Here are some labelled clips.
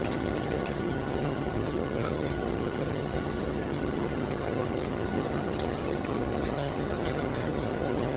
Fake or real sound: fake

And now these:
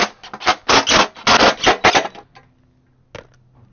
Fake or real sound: real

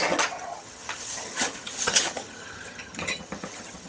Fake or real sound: fake